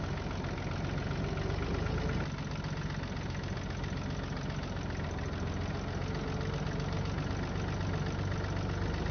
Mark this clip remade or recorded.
recorded